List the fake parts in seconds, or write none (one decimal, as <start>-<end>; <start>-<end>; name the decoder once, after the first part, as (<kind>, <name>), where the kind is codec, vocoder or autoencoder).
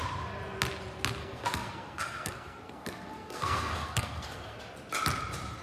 1.2-4.6 (codec, SNAC)